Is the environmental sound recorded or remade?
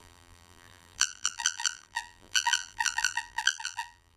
remade